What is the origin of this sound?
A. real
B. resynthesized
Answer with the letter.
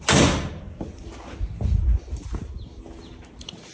A